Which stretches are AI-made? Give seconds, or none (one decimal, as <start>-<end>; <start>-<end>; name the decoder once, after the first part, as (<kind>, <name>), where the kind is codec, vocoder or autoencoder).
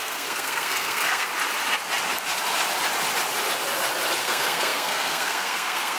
0.0-1.3 (codec, SNAC); 4.2-6.0